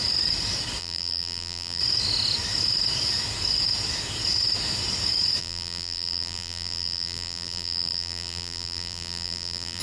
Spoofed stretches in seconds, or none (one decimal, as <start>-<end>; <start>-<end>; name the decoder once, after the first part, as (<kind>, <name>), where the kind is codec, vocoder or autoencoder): 0.8-1.8 (vocoder, BigVGAN v2); 5.4-9.8